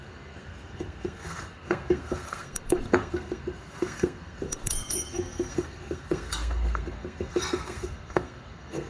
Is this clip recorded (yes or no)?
no